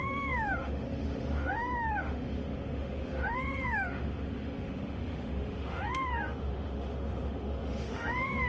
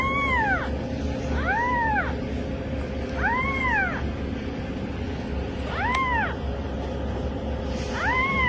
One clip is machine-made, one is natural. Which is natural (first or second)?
second